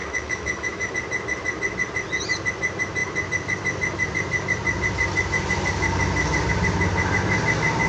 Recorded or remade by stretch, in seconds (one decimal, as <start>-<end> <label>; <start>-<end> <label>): 0.0-0.9 remade; 0.9-7.9 recorded

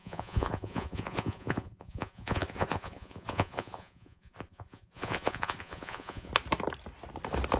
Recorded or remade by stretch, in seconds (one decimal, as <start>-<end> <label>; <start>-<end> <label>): 0.0-6.3 remade; 6.3-7.6 recorded

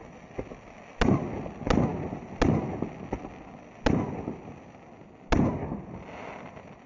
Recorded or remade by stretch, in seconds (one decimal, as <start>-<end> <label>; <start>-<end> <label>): 0.0-6.9 recorded

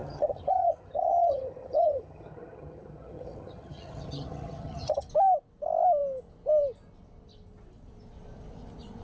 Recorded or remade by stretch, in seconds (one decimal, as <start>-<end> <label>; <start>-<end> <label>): 0.0-5.1 remade; 5.1-9.0 recorded

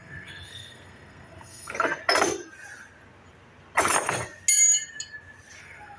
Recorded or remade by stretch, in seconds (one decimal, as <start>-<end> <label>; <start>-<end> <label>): 0.0-2.0 remade; 2.0-5.6 recorded; 5.6-6.0 remade

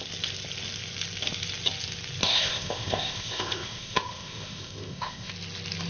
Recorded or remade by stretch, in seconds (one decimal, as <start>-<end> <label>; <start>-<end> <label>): 0.0-2.2 recorded; 2.2-5.3 remade; 5.3-5.9 recorded

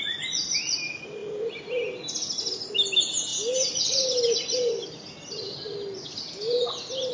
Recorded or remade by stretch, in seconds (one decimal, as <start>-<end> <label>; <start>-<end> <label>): 0.0-7.1 recorded

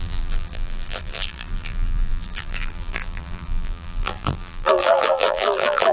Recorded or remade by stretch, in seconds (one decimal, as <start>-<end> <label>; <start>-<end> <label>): 0.0-5.9 remade